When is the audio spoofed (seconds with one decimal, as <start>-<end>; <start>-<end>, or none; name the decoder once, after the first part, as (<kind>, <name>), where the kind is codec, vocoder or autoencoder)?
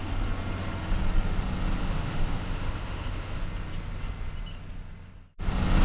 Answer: 1.8-3.4 (autoencoder, DAC-VAE)